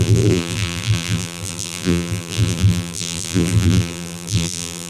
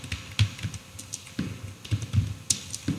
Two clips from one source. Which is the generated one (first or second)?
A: first